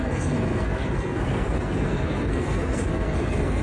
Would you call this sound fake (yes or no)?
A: yes